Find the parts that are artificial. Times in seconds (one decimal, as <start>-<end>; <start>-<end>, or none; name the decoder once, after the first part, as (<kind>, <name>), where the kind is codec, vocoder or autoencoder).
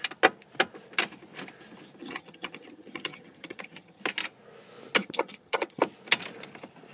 2.0-4.0 (vocoder, HiFi-GAN); 5.0-5.8